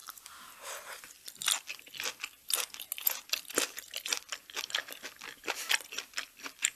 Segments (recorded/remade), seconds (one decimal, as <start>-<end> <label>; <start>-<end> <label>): 0.0-6.8 recorded